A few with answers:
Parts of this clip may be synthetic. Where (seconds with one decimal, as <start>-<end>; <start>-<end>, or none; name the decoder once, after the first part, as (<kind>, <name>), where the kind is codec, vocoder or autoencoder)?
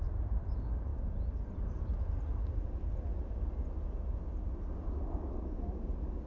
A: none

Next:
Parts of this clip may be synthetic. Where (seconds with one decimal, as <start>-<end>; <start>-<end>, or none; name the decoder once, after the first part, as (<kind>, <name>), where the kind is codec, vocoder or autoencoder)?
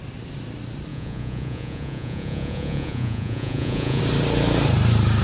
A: 0.9-4.0 (vocoder, Vocos)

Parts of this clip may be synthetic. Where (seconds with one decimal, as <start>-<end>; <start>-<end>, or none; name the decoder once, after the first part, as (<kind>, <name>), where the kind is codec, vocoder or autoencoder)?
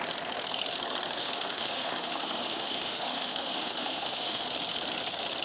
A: 1.2-4.4 (autoencoder, DAC-VAE)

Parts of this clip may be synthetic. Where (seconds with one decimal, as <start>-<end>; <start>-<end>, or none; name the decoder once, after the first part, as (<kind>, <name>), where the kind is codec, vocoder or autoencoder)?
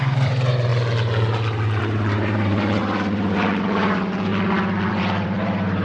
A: 0.0-0.7 (vocoder, BigVGAN v2); 1.8-4.3; 4.9-5.8